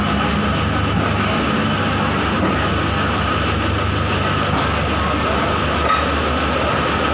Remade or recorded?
recorded